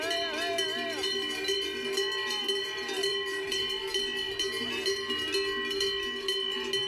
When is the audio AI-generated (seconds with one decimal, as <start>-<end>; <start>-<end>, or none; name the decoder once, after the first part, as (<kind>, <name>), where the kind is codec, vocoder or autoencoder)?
3.1-3.6 (vocoder, BigVGAN v2)